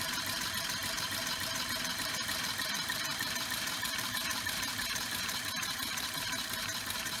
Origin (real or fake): fake